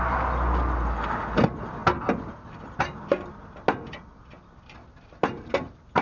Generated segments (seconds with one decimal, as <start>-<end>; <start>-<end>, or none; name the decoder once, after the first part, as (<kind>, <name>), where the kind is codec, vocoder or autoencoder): none